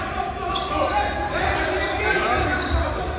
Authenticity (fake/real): real